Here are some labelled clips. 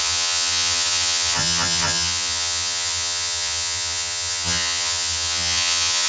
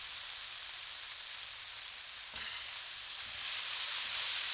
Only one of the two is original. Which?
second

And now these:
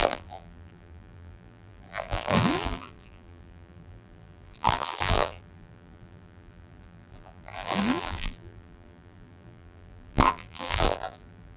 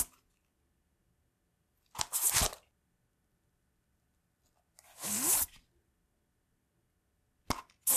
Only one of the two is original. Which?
second